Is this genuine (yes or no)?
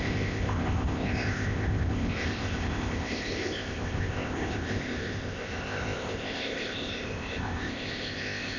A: no